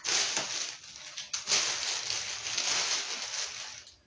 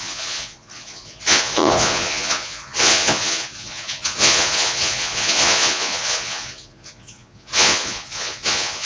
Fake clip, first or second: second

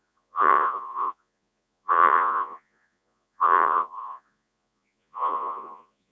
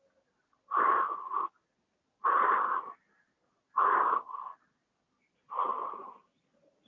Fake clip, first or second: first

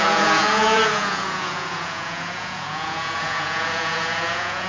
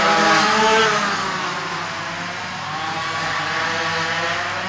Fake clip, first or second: first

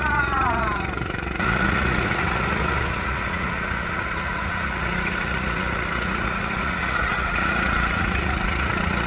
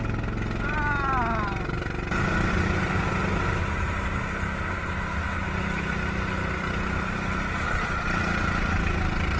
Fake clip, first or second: first